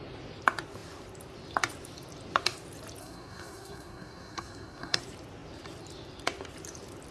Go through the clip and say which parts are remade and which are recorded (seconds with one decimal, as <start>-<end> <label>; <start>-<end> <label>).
0.0-3.0 recorded; 3.0-5.0 remade; 5.0-7.1 recorded